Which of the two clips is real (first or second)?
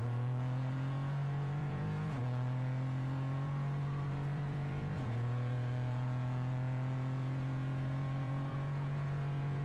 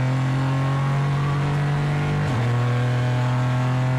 second